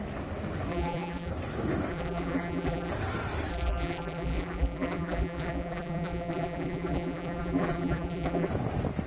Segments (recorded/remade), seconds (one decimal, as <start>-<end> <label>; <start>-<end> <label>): 0.0-0.7 recorded; 0.7-1.3 remade; 1.3-1.9 recorded; 1.9-2.9 remade; 2.9-3.5 recorded; 3.5-8.5 remade; 8.5-9.1 recorded